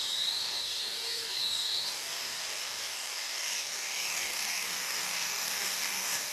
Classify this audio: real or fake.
fake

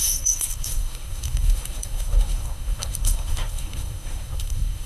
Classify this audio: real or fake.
fake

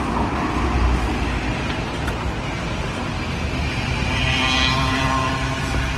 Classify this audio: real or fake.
real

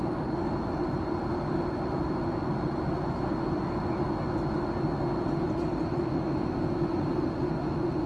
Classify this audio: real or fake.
real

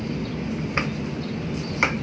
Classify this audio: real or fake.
real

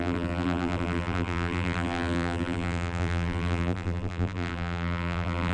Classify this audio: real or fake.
fake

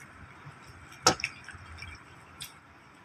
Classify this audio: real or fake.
real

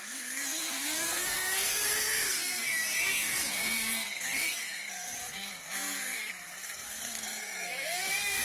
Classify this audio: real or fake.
fake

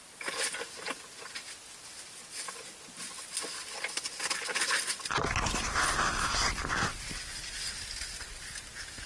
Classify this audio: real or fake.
real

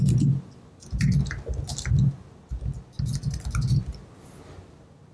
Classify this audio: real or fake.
real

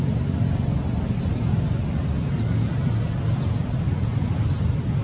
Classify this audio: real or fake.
real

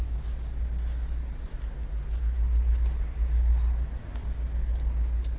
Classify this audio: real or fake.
real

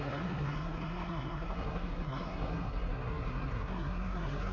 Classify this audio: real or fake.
fake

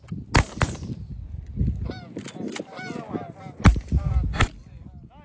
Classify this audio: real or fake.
real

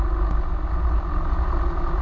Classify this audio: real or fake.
real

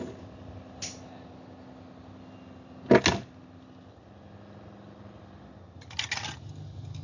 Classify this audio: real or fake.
real